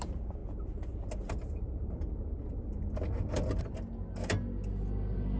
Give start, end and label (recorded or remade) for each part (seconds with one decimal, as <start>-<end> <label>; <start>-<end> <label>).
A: 0.0-5.4 recorded